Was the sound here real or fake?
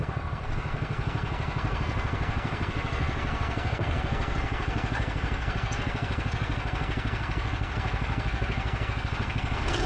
fake